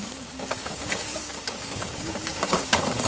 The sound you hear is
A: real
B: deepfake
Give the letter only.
B